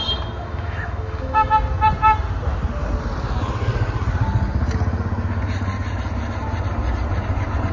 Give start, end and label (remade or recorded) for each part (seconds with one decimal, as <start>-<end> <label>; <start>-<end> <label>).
0.0-0.4 recorded; 0.4-1.5 remade; 1.5-7.7 recorded